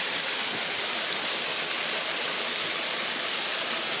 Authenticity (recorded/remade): recorded